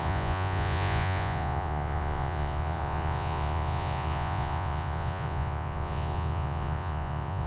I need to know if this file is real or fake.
fake